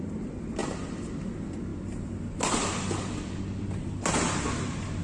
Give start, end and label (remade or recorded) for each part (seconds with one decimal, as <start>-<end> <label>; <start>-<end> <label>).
0.0-5.0 recorded